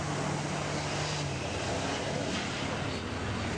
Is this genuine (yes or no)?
yes